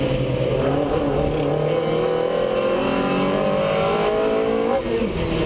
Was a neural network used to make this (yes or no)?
no